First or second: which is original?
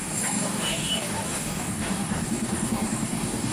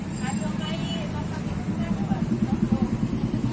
second